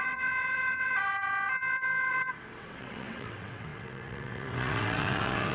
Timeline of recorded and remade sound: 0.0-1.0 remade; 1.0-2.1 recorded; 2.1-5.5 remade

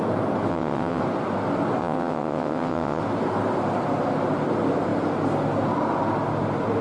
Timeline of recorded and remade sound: 0.0-0.5 recorded; 0.5-1.0 remade; 1.0-1.8 recorded; 1.8-3.0 remade; 3.0-6.8 recorded